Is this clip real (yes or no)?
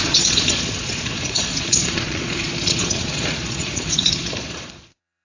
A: no